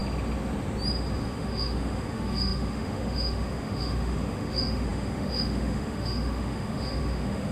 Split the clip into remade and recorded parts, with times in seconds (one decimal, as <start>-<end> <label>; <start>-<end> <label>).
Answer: 0.0-1.2 recorded; 1.2-7.5 remade